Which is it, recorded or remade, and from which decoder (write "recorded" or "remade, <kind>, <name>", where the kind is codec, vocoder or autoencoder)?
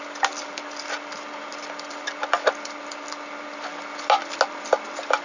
recorded